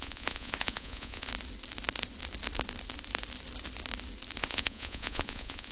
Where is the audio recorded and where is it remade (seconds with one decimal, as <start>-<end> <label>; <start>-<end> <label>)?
0.0-1.3 remade; 1.3-4.4 recorded; 4.4-5.7 remade